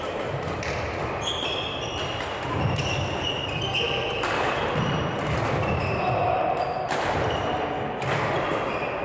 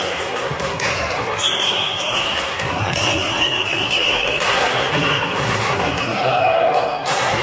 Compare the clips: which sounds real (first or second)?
first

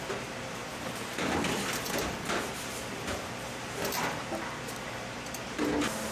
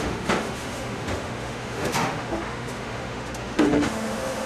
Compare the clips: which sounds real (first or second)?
first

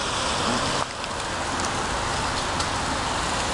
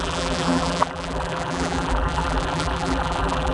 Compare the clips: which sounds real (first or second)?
first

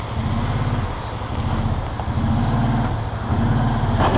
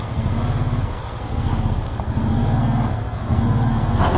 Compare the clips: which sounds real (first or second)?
first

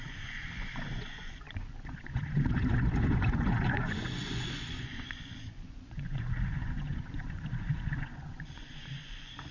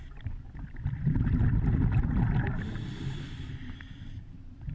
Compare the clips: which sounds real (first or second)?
second